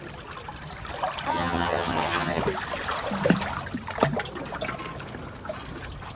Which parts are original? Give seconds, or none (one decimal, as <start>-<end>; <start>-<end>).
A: 0.0-1.3; 2.4-6.1